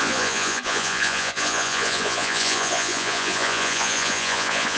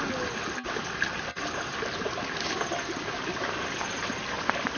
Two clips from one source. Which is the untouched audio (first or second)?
second